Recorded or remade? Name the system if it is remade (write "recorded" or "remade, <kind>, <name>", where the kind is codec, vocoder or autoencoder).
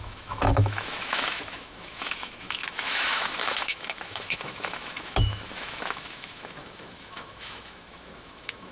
remade, autoencoder, DAC-VAE